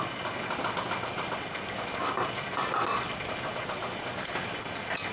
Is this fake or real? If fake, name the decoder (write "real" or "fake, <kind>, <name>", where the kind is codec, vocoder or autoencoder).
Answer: real